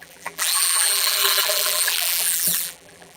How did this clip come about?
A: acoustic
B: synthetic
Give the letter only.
B